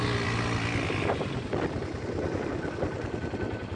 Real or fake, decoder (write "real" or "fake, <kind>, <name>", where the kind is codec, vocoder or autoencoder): real